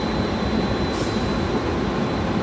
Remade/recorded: recorded